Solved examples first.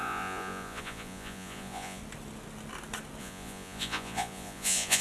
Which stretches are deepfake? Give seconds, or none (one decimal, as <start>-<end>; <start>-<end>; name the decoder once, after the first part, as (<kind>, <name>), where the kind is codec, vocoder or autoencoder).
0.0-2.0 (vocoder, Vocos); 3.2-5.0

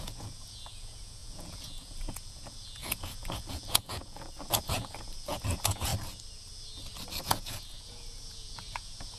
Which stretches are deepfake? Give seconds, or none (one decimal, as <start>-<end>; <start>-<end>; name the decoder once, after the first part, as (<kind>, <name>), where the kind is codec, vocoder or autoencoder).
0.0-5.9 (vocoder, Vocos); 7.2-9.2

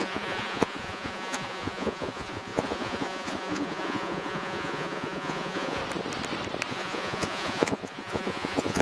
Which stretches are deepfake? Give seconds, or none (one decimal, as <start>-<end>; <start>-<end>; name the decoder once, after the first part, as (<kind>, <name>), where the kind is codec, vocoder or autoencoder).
0.0-5.8 (vocoder, Vocos); 6.7-8.8

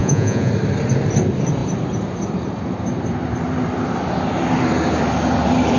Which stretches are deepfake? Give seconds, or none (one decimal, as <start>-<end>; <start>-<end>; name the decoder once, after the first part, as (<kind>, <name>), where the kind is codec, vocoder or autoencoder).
0.0-0.5 (vocoder, Vocos)

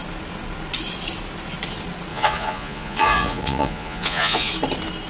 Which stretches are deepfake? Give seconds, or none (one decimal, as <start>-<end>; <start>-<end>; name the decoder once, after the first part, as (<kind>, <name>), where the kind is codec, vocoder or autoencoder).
2.1-4.5 (vocoder, Vocos)

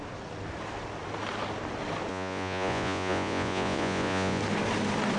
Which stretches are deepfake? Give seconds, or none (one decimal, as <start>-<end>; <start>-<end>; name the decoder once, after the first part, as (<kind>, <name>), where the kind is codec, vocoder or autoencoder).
2.1-4.4 (vocoder, Vocos)

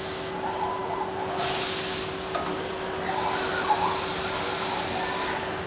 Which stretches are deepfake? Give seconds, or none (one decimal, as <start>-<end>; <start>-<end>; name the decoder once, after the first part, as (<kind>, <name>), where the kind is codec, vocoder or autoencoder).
none

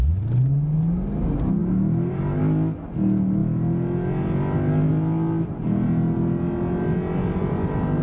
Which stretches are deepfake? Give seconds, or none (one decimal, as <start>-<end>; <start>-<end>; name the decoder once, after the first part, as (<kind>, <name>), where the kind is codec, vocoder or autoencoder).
none